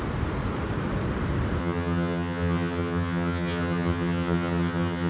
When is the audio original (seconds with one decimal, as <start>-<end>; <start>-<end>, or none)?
0.0-1.6